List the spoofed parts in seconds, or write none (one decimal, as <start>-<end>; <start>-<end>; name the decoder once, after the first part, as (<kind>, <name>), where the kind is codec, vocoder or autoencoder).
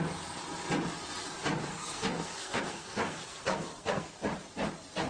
1.7-4.2 (codec, SNAC)